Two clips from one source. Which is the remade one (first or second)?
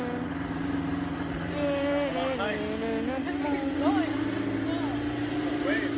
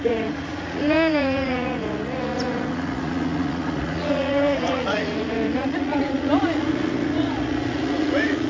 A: second